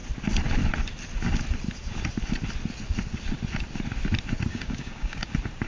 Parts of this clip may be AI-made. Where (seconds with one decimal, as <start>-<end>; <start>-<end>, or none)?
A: 4.5-5.3